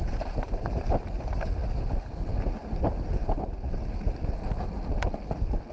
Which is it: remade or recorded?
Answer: recorded